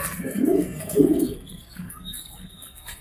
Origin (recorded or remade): remade